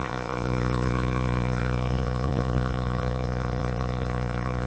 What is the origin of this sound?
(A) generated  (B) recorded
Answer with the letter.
A